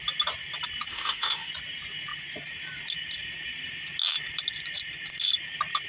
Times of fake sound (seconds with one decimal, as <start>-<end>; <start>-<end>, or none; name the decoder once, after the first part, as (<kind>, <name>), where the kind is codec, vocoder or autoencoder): 0.9-1.5 (autoencoder, DAC-VAE)